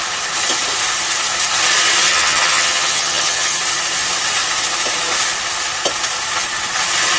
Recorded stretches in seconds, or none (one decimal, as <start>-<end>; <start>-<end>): 0.0-2.1; 3.6-7.2